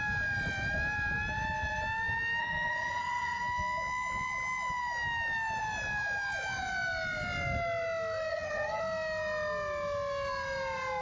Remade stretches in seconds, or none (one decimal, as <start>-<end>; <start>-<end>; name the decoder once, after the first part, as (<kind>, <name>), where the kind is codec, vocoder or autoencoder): 2.4-3.4 (vocoder, HiFi-GAN); 8.3-8.8

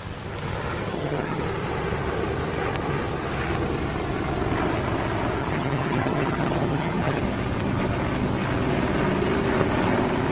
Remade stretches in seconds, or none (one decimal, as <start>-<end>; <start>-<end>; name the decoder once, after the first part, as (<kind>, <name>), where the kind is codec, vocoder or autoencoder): 0.9-1.4 (vocoder, HiFi-GAN); 5.4-7.2

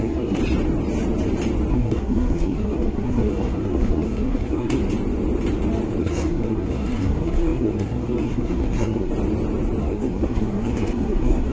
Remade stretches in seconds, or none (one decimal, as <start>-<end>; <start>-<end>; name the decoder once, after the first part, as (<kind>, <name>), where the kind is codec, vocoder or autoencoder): 0.0-0.4 (codec, SNAC); 1.7-4.8; 6.0-9.1; 9.8-11.5

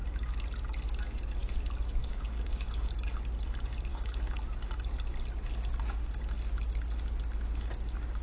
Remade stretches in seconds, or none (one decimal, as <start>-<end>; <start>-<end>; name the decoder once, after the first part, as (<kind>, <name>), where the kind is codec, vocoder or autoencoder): 2.0-2.9 (codec, DAC); 3.9-4.4